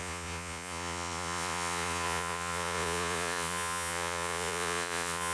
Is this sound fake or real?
fake